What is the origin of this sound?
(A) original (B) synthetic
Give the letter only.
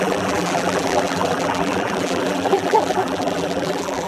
B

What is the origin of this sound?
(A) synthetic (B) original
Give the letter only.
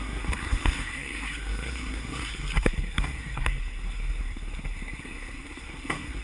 A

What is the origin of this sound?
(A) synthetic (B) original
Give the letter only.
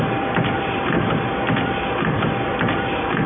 B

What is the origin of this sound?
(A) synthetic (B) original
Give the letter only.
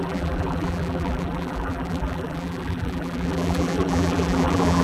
A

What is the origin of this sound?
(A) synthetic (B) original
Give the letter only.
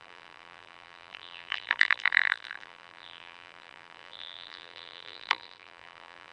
A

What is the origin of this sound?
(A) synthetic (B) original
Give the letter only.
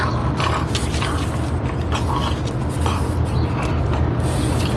B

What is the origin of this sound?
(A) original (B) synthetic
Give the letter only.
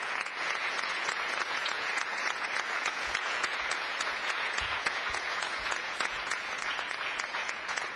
B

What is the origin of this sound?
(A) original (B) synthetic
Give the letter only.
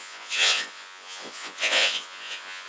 B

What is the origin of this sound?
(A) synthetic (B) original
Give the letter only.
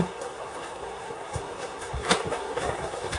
A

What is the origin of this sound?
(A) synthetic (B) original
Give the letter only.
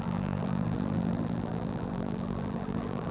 A